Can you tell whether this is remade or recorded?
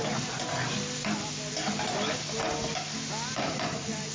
recorded